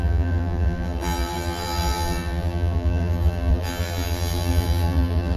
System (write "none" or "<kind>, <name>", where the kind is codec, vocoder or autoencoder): vocoder, BigVGAN v2